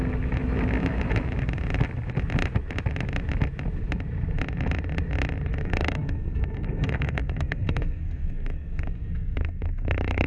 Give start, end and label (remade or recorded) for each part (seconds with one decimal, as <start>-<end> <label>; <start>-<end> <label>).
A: 0.0-5.6 recorded; 5.6-10.3 remade